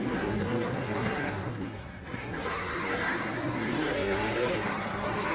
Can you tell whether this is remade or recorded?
remade